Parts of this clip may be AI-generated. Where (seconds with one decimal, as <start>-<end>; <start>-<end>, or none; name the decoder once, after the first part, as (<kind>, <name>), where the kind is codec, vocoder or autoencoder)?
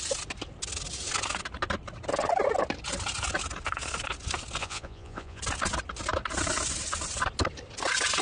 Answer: 4.6-5.4 (vocoder, Vocos)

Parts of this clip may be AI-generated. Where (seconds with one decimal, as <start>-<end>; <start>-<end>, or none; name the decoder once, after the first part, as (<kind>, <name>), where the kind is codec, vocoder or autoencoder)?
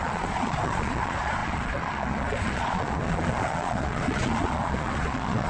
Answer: 0.0-5.5 (vocoder, Vocos)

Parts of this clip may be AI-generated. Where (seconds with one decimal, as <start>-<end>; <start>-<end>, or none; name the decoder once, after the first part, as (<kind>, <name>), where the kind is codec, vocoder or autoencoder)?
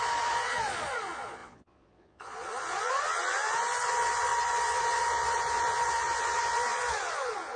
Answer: 0.0-7.6 (vocoder, Vocos)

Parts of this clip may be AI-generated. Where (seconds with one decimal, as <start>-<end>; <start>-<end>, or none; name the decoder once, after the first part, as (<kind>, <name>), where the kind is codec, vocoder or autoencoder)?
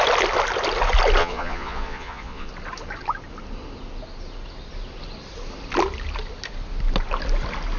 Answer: 1.2-2.5 (vocoder, Vocos)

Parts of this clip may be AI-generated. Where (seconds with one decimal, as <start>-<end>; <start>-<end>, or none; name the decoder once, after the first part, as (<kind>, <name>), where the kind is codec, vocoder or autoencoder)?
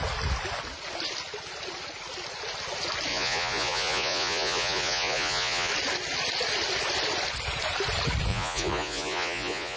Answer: 3.1-5.7 (vocoder, Vocos); 8.3-9.8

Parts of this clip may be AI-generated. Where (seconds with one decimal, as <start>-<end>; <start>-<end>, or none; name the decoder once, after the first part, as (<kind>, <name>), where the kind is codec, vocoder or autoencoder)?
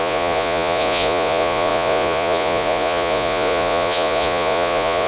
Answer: 0.0-5.1 (vocoder, Vocos)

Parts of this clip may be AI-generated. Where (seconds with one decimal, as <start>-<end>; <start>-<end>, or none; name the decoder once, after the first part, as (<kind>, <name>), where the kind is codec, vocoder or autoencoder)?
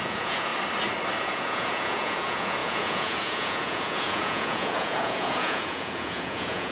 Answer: 0.0-0.5 (vocoder, Vocos); 1.2-6.7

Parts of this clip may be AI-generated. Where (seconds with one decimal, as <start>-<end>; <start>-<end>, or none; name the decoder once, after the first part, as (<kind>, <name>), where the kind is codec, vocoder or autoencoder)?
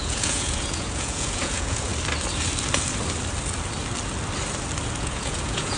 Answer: 0.0-1.9 (vocoder, Vocos); 5.0-5.8